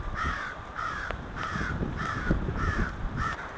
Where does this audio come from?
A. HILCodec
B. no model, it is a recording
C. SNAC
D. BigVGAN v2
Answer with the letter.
D